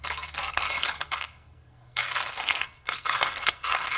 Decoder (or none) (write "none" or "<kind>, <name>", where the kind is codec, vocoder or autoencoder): codec, SNAC